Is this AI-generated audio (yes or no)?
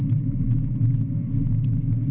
no